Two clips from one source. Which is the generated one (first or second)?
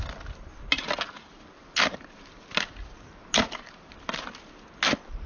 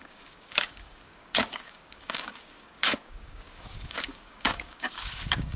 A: second